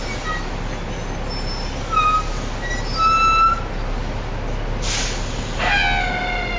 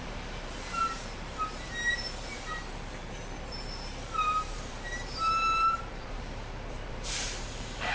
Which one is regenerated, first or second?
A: second